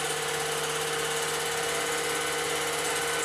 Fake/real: real